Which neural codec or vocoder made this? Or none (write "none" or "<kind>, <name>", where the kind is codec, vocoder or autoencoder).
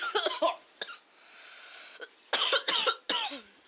none